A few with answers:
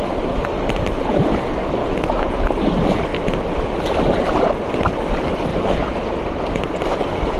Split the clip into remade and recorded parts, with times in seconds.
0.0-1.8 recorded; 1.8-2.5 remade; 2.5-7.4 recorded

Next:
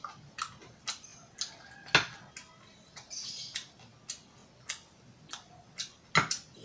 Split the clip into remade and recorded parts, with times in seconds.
0.0-6.6 recorded

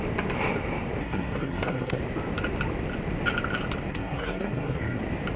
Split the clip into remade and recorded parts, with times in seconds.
0.0-1.0 recorded; 1.0-2.0 remade; 2.0-3.9 recorded; 3.9-5.0 remade; 5.0-5.4 recorded

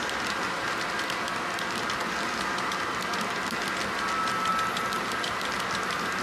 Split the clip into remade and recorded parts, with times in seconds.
0.0-6.2 recorded